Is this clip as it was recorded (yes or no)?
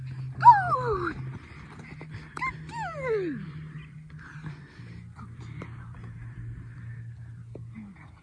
yes